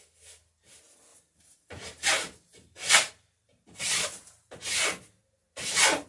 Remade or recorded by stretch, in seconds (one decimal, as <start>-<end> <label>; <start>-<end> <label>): 0.0-1.1 recorded; 1.1-4.6 remade; 4.6-6.1 recorded